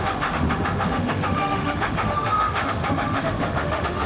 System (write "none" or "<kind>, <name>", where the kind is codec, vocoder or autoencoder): autoencoder, DAC-VAE